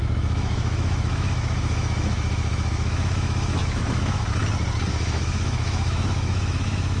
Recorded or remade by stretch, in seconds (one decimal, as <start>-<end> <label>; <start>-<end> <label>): 0.0-4.4 remade; 4.4-4.9 recorded; 4.9-7.0 remade